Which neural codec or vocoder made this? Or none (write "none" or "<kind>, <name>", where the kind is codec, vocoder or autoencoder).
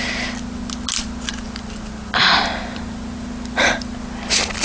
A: none